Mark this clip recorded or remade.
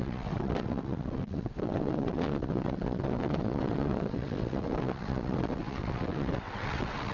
remade